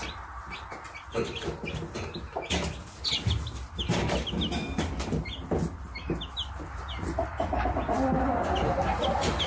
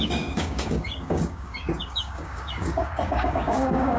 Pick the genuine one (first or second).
first